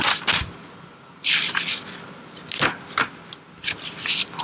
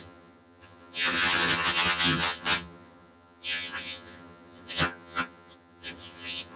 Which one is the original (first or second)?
first